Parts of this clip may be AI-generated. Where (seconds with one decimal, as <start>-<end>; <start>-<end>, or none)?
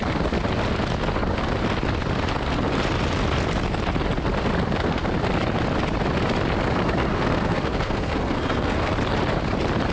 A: 7.1-8.9